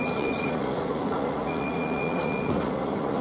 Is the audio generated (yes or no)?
yes